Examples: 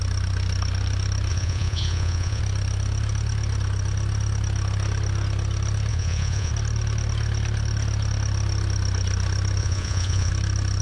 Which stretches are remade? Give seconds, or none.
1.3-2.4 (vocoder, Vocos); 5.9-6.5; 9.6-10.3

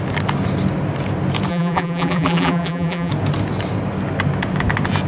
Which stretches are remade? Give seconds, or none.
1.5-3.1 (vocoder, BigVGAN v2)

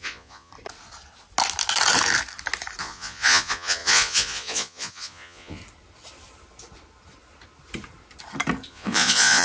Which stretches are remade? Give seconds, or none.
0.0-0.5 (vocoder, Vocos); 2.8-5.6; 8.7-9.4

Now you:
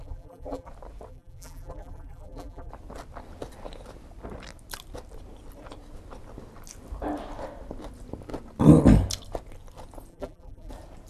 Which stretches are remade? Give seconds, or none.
0.0-0.7 (vocoder, BigVGAN v2); 1.1-2.7; 10.1-10.7